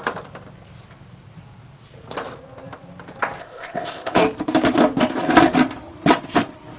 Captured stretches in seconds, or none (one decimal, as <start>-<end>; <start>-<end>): 0.0-3.4; 4.2-6.8